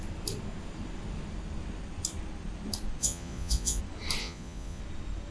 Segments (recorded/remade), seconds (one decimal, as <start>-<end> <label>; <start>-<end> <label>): 0.0-3.0 recorded; 3.0-3.8 remade; 3.8-4.2 recorded; 4.2-4.8 remade; 4.8-5.3 recorded